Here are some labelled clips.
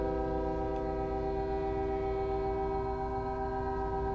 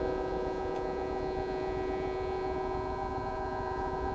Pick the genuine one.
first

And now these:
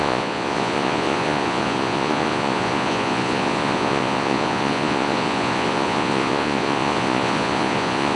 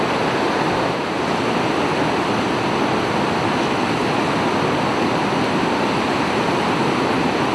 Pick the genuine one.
second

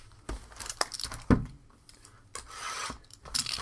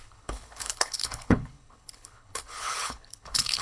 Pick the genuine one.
first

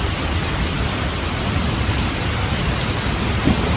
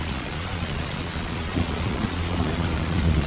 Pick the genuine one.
first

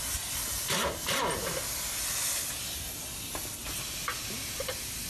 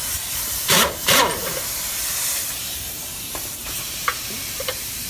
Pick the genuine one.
first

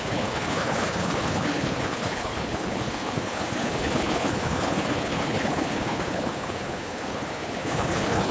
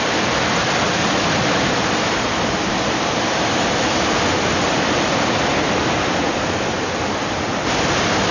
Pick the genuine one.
second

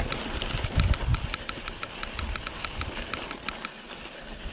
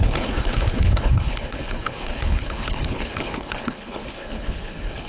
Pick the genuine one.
first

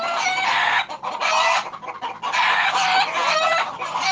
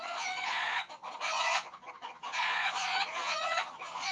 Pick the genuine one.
first